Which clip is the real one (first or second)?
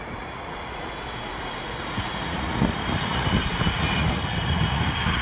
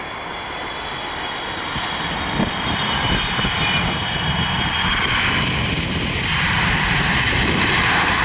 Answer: second